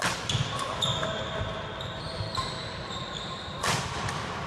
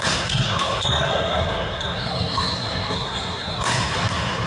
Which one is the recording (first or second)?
first